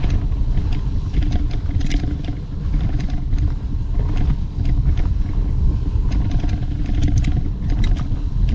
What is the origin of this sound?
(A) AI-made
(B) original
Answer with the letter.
B